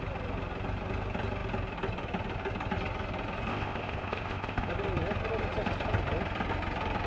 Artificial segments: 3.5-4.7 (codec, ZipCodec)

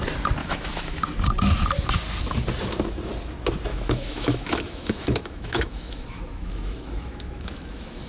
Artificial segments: 0.4-1.0 (autoencoder, DAC-VAE); 3.7-8.1

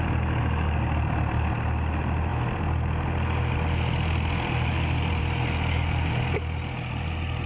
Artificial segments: none

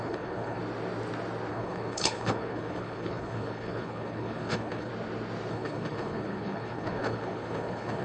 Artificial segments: 0.0-0.6 (codec, HILCodec); 1.5-4.9; 5.5-8.0

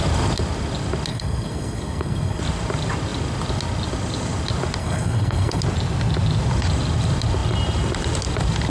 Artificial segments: 1.1-2.4 (codec, SNAC); 4.8-5.6

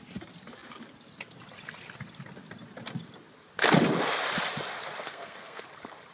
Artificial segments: 5.0-5.6 (codec, SNAC)

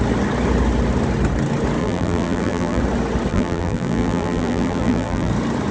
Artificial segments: 1.8-2.8 (vocoder, BigVGAN v2); 3.3-5.3